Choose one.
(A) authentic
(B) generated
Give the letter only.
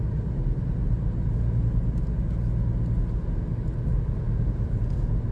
A